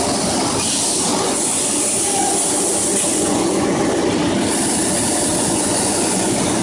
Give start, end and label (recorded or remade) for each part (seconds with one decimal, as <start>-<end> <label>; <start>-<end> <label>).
0.0-1.1 recorded; 1.1-1.8 remade; 1.8-3.1 recorded; 3.1-3.8 remade; 3.8-5.3 recorded; 5.3-6.6 remade